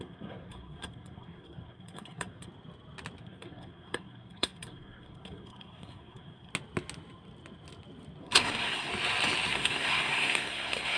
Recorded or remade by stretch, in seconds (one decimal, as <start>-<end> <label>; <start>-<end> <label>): 0.0-2.5 remade; 2.5-3.2 recorded; 3.2-6.5 remade; 6.5-8.2 recorded; 8.2-8.9 remade; 8.9-9.5 recorded; 9.5-11.0 remade

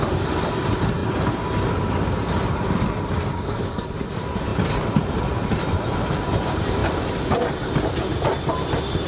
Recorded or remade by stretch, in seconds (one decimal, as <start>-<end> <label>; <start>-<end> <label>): 0.0-1.0 remade; 1.0-3.3 recorded; 3.3-4.5 remade; 4.5-5.1 recorded; 5.1-6.8 remade; 6.8-7.5 recorded; 7.5-8.1 remade; 8.1-9.1 recorded

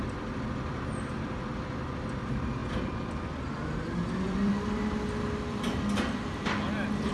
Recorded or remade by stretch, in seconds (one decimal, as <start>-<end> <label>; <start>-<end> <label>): 0.0-7.1 recorded